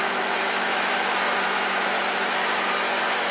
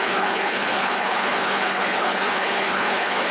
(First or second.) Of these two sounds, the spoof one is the second